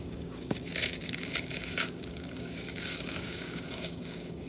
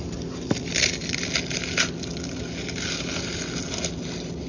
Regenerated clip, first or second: first